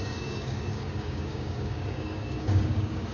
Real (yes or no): no